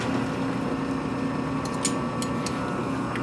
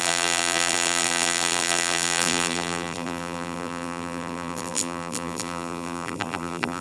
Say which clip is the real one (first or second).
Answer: first